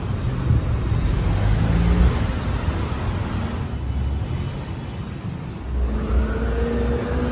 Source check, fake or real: real